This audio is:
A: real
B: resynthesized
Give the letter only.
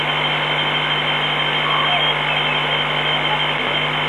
A